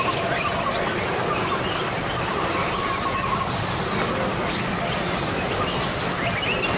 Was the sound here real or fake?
real